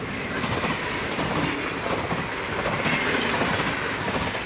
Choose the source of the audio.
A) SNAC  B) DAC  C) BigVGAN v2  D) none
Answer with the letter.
D